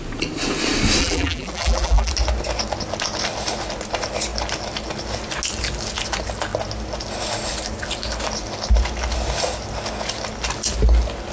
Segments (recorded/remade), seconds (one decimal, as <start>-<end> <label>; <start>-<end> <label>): 0.0-1.0 recorded; 1.0-2.1 remade; 2.1-11.3 recorded